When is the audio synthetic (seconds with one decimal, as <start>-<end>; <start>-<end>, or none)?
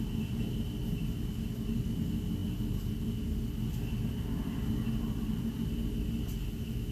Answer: none